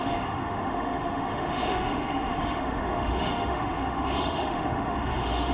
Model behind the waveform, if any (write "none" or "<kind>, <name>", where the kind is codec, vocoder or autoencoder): autoencoder, DAC-VAE